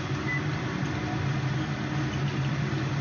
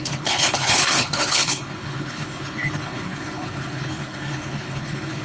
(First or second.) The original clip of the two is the first